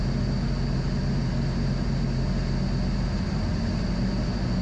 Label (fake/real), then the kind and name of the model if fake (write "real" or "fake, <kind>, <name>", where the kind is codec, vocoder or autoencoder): real